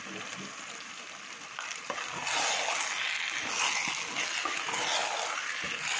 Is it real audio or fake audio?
real